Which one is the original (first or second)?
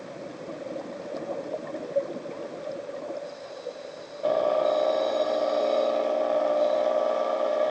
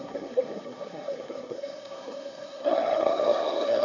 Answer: first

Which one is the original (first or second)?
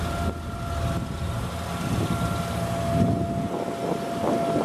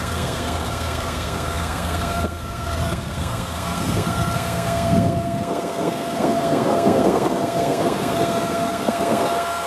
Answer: first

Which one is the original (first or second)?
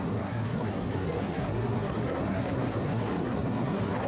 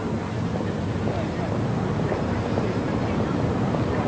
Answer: second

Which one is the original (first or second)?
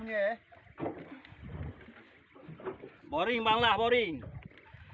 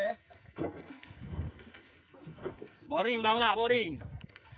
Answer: first